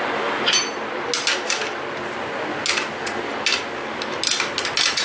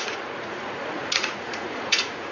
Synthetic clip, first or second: second